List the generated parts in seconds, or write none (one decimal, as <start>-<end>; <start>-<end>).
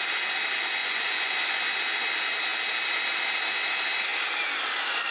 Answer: 0.8-1.6